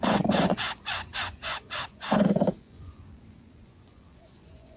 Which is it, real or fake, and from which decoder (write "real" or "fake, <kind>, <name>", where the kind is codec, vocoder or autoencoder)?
fake, vocoder, Vocos